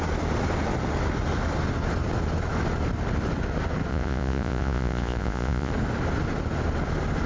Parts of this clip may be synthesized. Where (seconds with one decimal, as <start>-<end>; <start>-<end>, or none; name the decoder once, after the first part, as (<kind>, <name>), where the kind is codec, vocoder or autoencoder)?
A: 3.9-5.7 (vocoder, Vocos)